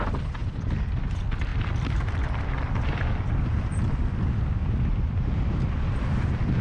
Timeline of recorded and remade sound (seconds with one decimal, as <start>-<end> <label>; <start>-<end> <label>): 0.0-0.4 recorded; 0.4-1.1 remade; 1.1-1.5 recorded; 1.5-4.0 remade; 4.0-6.6 recorded